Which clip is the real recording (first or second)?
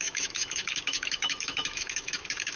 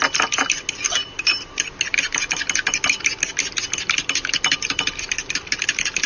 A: second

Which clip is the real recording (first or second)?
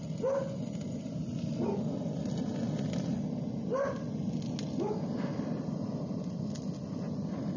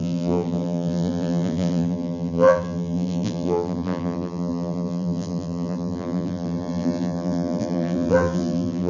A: first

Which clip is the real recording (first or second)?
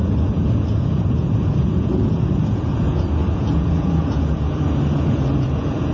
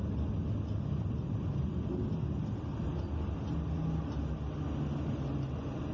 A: second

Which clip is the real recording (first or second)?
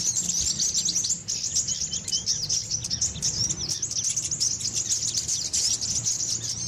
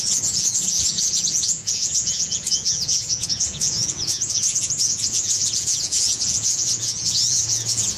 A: first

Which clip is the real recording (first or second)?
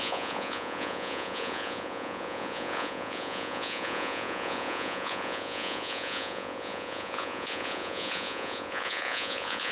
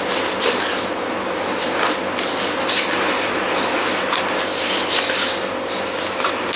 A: second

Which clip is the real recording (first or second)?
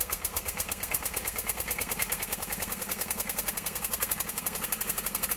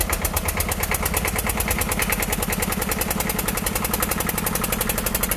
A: second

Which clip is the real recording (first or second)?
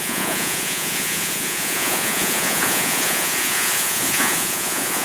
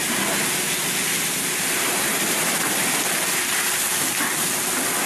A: second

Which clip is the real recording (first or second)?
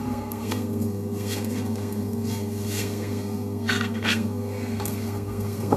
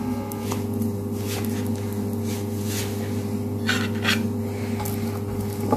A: second